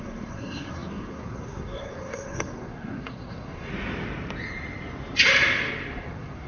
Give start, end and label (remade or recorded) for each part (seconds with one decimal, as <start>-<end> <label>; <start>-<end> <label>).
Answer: 0.0-3.7 remade; 3.7-6.0 recorded; 6.0-6.5 remade

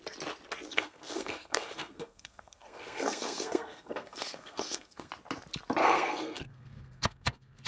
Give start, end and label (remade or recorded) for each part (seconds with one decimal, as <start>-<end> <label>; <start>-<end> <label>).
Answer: 0.0-0.7 recorded; 0.7-5.1 remade; 5.1-5.8 recorded; 5.8-7.7 remade

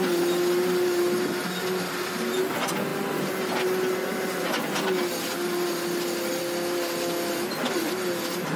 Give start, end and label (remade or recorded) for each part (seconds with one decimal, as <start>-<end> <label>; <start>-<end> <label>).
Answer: 0.0-8.6 recorded

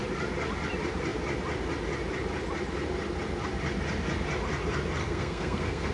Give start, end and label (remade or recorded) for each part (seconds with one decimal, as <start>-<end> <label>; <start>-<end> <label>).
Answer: 0.0-5.0 recorded; 5.0-5.9 remade

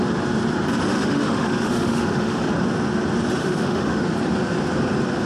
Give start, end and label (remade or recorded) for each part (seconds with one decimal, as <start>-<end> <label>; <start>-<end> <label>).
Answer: 0.0-0.9 recorded; 0.9-2.5 remade; 2.5-3.4 recorded; 3.4-4.0 remade; 4.0-5.3 recorded

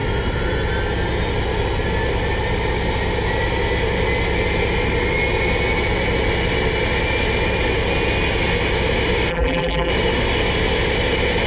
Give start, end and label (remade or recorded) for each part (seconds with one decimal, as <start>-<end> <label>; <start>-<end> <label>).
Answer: 0.0-9.3 recorded; 9.3-9.9 remade; 9.9-11.5 recorded

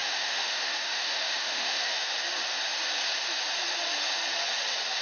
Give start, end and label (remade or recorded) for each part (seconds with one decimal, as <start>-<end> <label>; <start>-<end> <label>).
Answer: 0.0-2.1 remade; 2.1-5.0 recorded